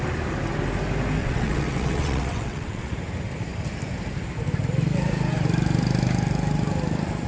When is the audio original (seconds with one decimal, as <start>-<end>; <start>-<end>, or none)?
0.0-1.2; 2.9-7.3

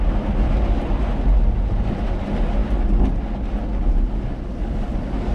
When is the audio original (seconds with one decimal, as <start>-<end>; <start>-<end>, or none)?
0.0-4.6

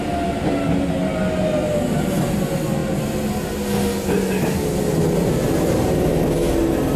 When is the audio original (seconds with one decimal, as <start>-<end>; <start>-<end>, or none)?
0.0-7.0

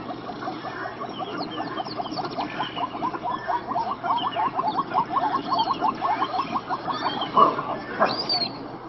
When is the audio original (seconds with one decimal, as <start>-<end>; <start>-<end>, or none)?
0.0-0.5; 1.1-3.9; 7.3-8.9

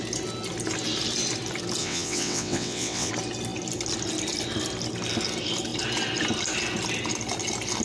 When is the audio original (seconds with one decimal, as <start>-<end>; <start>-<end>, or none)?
0.0-1.8; 3.1-7.8